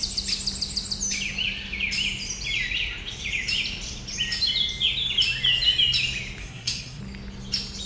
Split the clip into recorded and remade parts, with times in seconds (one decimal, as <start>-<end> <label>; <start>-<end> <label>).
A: 0.0-6.4 recorded; 6.4-7.0 remade; 7.0-7.9 recorded